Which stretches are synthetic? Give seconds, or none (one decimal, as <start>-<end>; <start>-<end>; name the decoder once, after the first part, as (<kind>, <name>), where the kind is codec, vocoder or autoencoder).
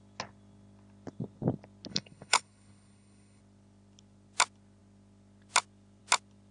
1.9-3.4 (codec, HILCodec)